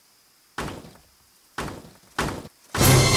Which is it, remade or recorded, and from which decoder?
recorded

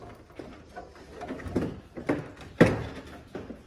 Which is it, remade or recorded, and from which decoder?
recorded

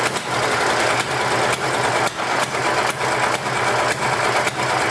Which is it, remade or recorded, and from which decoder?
recorded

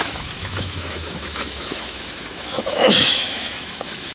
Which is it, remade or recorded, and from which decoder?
remade, autoencoder, DAC-VAE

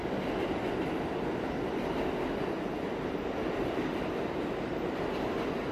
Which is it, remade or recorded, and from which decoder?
recorded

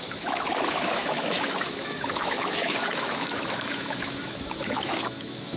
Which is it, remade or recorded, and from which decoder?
remade, autoencoder, DAC-VAE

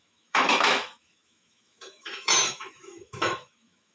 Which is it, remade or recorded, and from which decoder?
remade, autoencoder, DAC-VAE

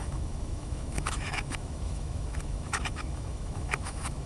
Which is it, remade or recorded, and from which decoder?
remade, autoencoder, DAC-VAE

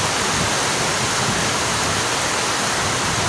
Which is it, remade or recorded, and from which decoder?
recorded